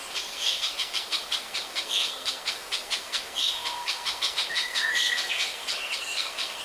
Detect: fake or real fake